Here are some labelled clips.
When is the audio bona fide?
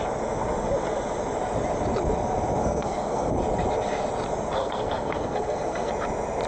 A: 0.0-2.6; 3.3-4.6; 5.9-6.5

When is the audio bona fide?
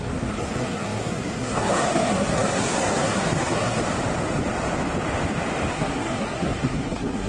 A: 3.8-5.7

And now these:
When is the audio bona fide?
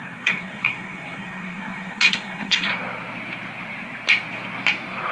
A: 2.7-5.1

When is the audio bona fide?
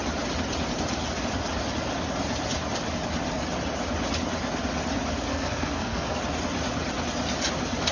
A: 0.0-5.3; 6.2-7.9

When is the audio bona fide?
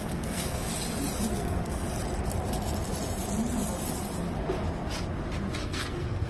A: 0.7-1.3; 1.8-5.6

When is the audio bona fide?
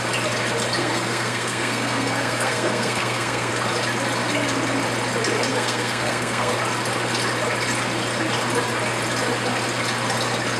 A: 0.0-0.8; 3.5-5.5; 6.5-10.6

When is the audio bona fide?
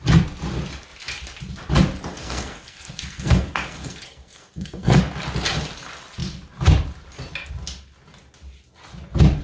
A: 0.0-2.1; 5.0-9.4